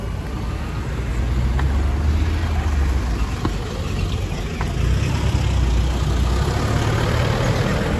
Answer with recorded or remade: recorded